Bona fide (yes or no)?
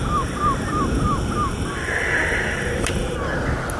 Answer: yes